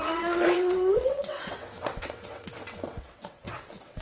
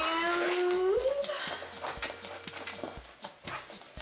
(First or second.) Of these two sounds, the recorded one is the second